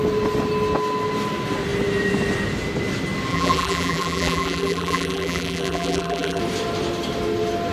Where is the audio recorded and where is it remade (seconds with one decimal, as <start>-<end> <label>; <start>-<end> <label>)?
0.0-3.3 recorded; 3.3-6.4 remade; 6.4-7.7 recorded